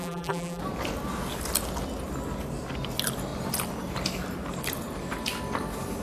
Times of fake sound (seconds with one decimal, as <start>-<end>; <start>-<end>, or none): 0.0-0.6